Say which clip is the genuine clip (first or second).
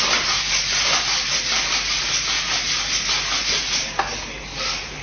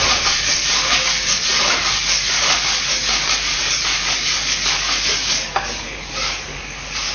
first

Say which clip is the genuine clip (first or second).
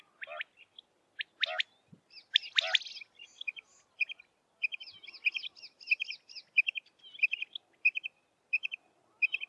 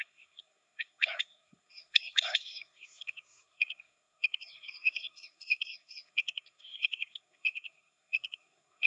first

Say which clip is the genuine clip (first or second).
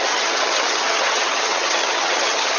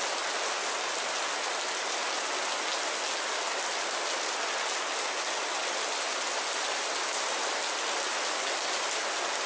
second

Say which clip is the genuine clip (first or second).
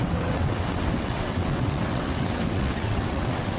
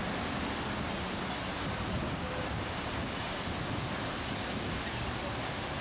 second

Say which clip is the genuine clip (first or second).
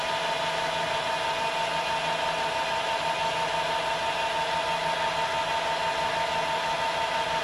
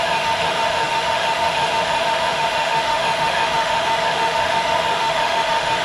first